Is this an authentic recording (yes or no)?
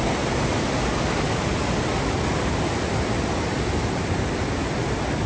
yes